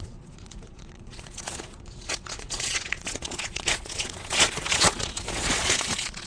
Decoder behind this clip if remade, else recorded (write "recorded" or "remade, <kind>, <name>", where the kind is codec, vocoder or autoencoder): remade, vocoder, Vocos